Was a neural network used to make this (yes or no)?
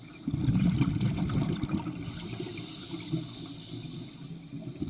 no